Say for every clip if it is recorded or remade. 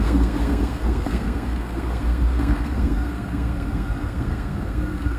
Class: remade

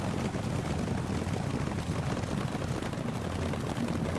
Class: recorded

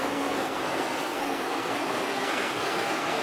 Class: remade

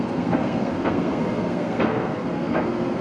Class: remade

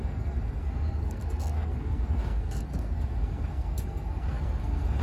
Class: remade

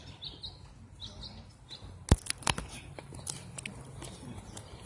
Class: recorded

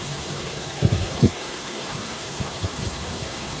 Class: remade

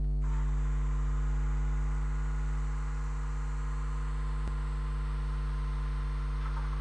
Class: recorded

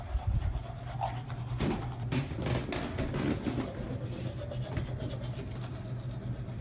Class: recorded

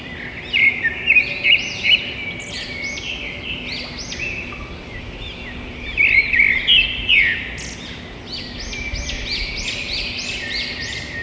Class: recorded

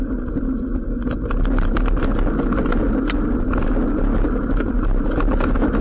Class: recorded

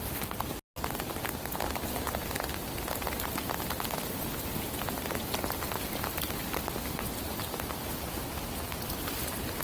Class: recorded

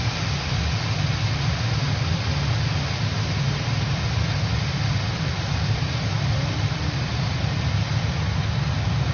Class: recorded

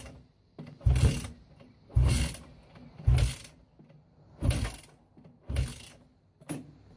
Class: recorded